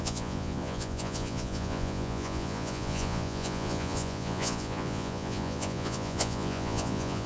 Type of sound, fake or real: fake